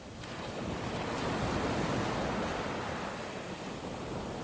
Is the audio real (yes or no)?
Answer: yes